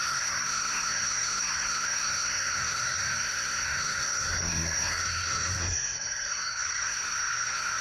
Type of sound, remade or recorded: remade